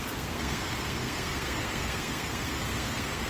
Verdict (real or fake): fake